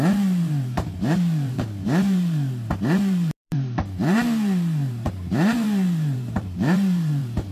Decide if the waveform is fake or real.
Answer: fake